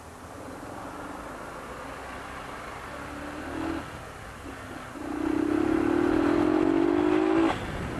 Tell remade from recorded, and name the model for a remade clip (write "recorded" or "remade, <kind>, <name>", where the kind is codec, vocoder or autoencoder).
recorded